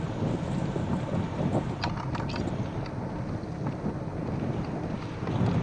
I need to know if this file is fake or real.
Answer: real